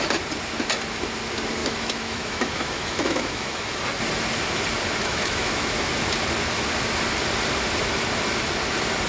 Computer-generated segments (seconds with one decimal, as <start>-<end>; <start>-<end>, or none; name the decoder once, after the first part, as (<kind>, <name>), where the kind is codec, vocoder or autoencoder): 1.6-3.8 (autoencoder, DAC-VAE); 5.0-5.9